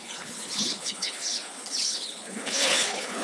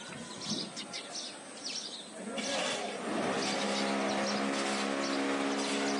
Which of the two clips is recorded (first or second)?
second